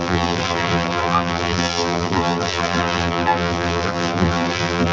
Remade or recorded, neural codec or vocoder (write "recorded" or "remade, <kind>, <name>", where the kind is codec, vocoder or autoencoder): remade, vocoder, BigVGAN v2